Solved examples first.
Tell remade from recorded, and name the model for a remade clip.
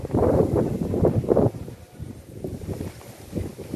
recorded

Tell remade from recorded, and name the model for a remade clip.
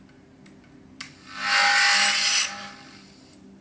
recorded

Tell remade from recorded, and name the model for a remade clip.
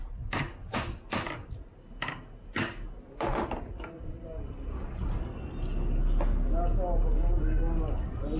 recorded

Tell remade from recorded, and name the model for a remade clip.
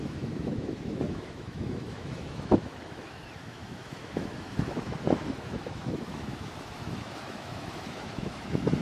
remade, autoencoder, DAC-VAE